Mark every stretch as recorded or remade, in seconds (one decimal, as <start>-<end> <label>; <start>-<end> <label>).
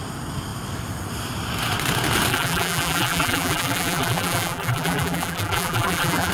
0.0-2.3 recorded; 2.3-6.3 remade